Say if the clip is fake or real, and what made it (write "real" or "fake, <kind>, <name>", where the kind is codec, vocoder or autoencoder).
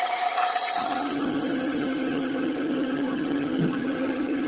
fake, vocoder, HiFi-GAN